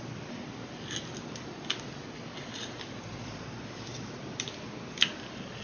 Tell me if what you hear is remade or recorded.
recorded